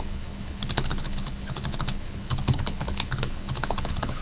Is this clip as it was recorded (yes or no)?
no